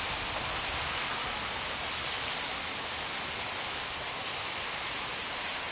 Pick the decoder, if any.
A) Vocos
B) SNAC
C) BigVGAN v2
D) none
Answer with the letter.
D